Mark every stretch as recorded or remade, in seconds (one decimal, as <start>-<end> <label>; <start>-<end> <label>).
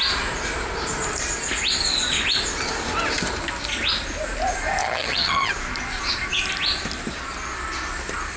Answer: 0.0-4.8 recorded; 4.8-5.5 remade; 5.5-8.4 recorded